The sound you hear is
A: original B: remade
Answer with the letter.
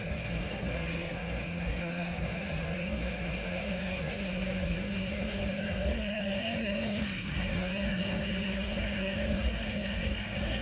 B